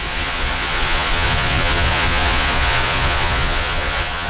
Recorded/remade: remade